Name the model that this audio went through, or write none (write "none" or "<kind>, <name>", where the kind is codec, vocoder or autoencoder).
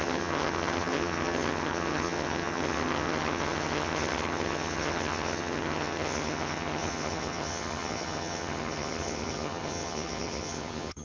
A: vocoder, HiFi-GAN